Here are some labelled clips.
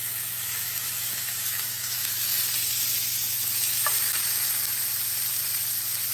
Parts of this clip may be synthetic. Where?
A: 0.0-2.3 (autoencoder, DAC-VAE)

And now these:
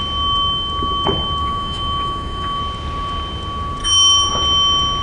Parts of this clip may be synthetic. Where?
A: 1.4-2.6 (autoencoder, DAC-VAE); 3.8-4.3